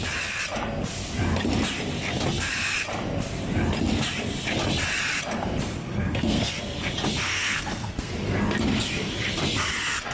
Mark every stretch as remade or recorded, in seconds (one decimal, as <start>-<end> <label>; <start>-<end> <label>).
0.0-5.8 recorded; 5.8-6.5 remade; 6.5-7.2 recorded; 7.2-8.1 remade; 8.1-10.1 recorded